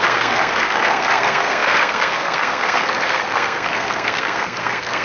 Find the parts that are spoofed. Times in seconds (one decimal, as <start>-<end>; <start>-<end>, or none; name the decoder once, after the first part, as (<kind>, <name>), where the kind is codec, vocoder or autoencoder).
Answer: 0.0-5.0 (codec, SNAC)